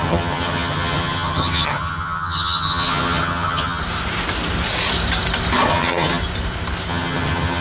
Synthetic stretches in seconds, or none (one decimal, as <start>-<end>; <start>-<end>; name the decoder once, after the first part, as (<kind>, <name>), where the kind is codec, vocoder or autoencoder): 0.0-3.8 (vocoder, HiFi-GAN); 5.7-6.2; 6.9-7.6